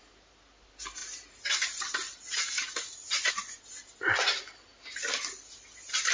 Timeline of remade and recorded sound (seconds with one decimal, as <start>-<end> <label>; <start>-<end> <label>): 0.0-1.0 recorded; 1.0-3.3 remade; 3.3-6.1 recorded